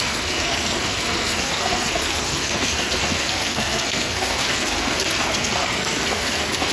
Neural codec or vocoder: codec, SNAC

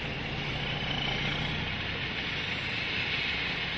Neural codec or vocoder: none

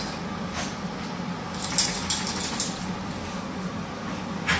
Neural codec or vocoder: none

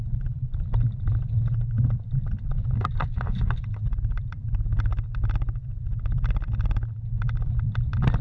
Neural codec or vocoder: none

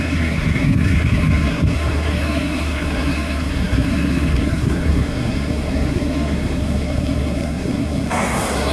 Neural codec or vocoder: codec, SNAC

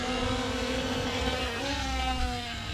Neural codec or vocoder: codec, SNAC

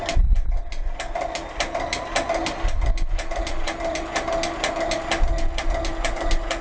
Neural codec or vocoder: none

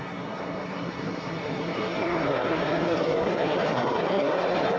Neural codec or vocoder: codec, SNAC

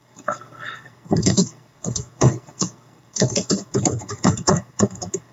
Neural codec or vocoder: codec, SNAC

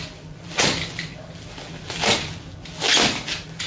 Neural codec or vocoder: none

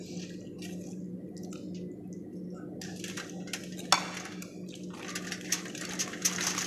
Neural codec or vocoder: none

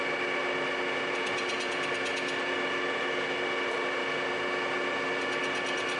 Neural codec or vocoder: none